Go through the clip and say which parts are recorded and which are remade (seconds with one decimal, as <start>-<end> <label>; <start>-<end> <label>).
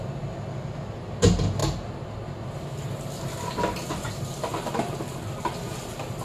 0.0-6.2 recorded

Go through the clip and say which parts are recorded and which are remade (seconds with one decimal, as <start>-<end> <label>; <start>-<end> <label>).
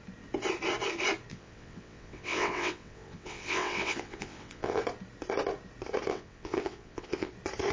0.0-1.3 recorded; 1.3-4.8 remade; 4.8-6.1 recorded; 6.1-7.3 remade; 7.3-7.7 recorded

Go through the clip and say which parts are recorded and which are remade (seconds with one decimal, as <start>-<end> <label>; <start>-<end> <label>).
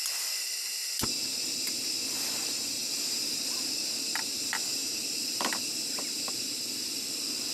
0.0-7.5 recorded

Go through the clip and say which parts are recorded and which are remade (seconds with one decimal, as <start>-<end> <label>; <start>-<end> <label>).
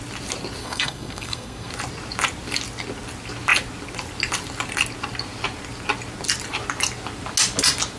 0.0-0.6 recorded; 0.6-1.7 remade; 1.7-8.0 recorded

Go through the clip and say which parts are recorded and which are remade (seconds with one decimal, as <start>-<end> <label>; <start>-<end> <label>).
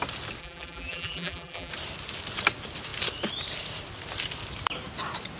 0.0-0.4 recorded; 0.4-1.7 remade; 1.7-5.4 recorded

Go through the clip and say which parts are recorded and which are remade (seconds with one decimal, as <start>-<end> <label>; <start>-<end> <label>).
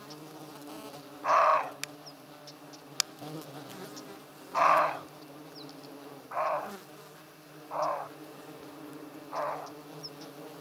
0.0-10.6 recorded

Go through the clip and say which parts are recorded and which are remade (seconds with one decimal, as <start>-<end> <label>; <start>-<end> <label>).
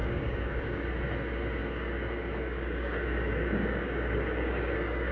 0.0-0.8 remade; 0.8-1.6 recorded; 1.6-5.1 remade